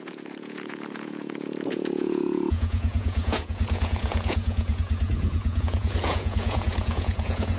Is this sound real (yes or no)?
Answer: no